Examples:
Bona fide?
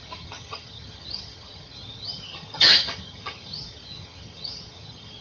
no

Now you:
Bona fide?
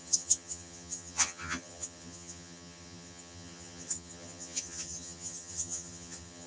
no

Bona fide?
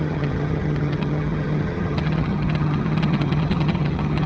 no